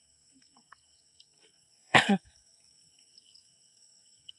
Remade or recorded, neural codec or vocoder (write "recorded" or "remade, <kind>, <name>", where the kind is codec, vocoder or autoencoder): remade, codec, SNAC